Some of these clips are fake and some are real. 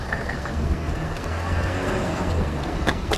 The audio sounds fake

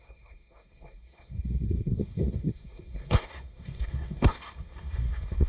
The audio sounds fake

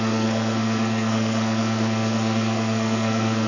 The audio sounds fake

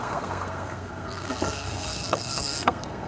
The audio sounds fake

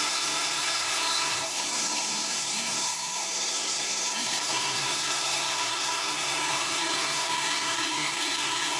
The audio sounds fake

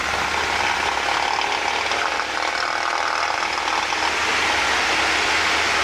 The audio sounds real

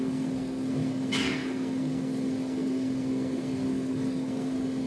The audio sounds fake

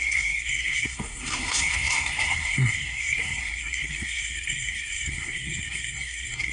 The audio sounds fake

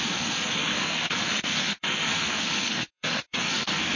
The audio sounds fake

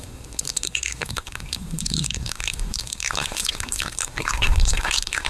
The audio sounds fake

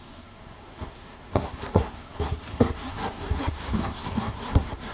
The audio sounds fake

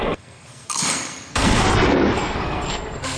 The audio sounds fake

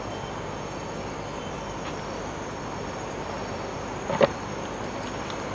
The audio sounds real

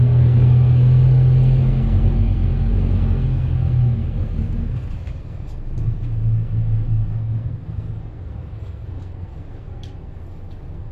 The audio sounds fake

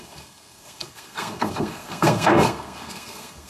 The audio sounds fake